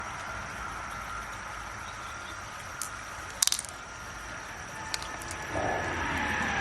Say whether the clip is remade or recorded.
recorded